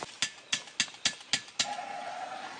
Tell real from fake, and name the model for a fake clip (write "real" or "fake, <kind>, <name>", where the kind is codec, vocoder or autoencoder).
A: real